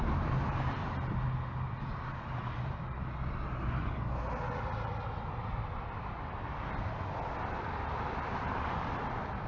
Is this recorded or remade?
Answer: recorded